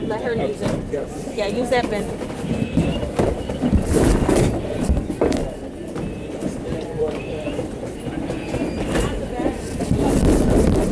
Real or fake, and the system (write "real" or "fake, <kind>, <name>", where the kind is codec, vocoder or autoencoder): fake, vocoder, BigVGAN v2